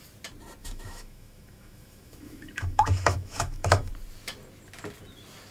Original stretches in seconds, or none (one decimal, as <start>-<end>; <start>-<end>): 0.0-0.6; 3.9-5.5